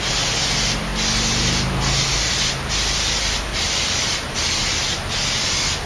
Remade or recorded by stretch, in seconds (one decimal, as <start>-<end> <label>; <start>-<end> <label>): 0.0-5.9 recorded